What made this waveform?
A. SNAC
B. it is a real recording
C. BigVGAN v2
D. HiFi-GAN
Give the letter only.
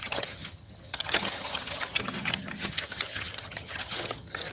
D